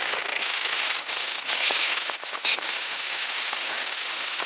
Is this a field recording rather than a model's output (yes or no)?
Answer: no